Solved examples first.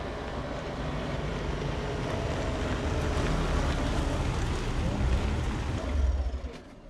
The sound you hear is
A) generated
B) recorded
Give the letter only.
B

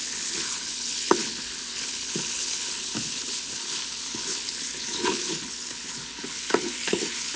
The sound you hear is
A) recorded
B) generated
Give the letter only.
B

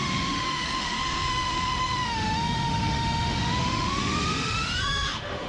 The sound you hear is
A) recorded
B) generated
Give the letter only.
B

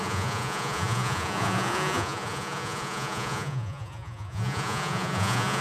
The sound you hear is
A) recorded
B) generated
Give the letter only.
B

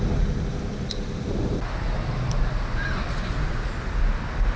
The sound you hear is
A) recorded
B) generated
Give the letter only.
A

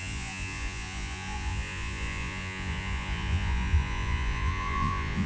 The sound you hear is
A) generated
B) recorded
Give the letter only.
A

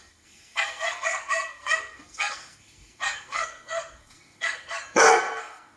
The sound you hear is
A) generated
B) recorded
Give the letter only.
A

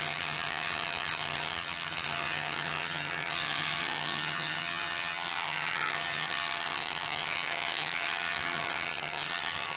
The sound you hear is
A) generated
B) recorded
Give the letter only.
A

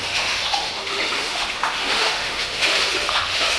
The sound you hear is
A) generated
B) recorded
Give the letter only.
A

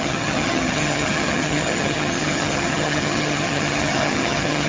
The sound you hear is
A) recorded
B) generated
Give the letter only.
B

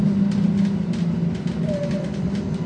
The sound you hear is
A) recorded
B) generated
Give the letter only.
A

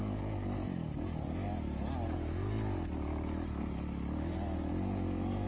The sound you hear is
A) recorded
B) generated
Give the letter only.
A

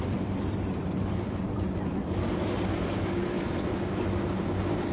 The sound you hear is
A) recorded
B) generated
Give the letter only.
B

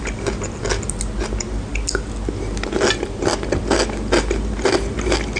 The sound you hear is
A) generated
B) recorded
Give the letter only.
B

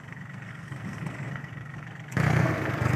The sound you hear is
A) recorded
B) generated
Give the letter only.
B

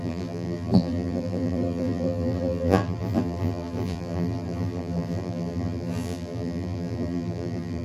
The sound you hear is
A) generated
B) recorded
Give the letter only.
A